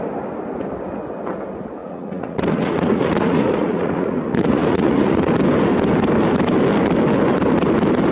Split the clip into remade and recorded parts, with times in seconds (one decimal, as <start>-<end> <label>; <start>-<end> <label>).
0.0-1.8 recorded; 1.8-5.3 remade; 5.3-8.1 recorded